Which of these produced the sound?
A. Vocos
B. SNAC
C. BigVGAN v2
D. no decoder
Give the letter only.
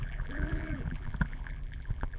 C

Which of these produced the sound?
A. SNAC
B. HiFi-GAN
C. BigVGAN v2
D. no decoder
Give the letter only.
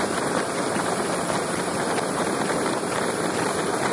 C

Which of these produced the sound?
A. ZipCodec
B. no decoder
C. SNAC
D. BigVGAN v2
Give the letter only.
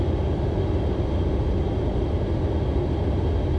B